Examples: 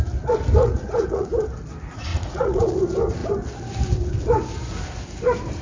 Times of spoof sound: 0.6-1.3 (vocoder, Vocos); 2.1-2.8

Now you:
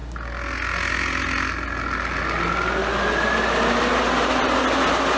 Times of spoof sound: none

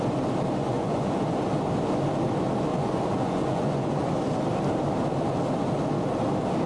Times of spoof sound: 0.6-1.2 (vocoder, Vocos); 2.7-4.1

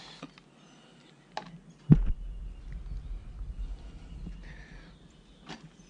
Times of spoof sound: none

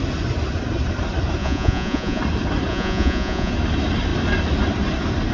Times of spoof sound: 1.4-2.2 (vocoder, Vocos); 2.7-3.5

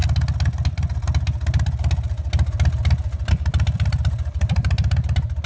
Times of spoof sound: none

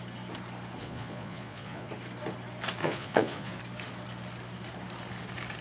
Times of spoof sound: 0.8-1.9 (vocoder, Vocos); 2.8-3.6

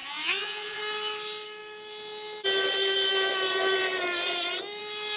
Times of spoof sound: 0.0-0.8 (vocoder, Vocos)